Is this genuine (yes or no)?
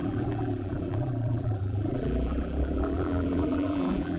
no